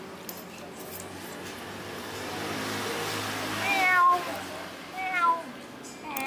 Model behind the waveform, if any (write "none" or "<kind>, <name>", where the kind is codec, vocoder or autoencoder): none